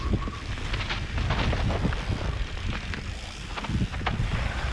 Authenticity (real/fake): real